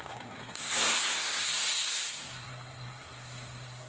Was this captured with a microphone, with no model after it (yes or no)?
no